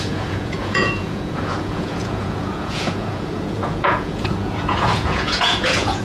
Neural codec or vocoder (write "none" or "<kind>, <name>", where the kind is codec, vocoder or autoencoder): vocoder, Vocos